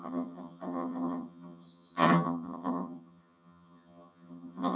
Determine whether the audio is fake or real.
fake